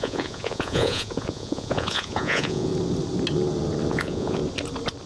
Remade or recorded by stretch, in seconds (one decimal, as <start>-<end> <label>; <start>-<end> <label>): 0.0-2.7 remade; 2.7-3.9 recorded; 3.9-4.4 remade; 4.4-5.1 recorded